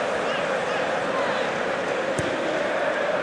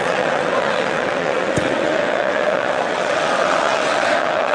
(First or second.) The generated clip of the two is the second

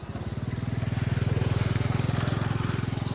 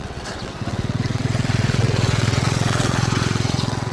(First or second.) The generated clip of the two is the second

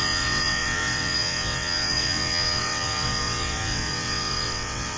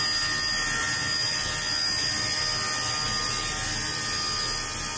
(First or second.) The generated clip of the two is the first